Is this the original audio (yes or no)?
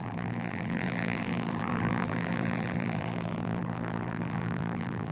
no